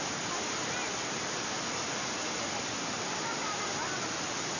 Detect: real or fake real